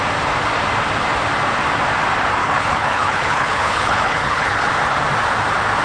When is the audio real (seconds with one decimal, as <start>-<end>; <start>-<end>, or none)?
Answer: 0.0-2.4; 4.7-5.8